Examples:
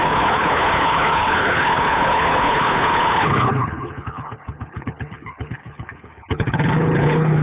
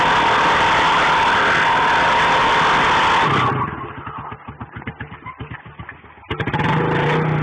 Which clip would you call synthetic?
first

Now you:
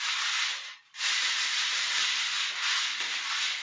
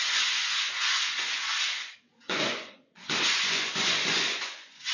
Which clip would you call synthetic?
second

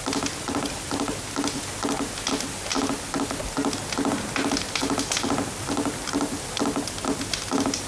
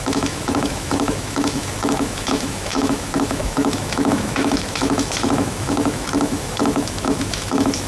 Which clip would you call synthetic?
second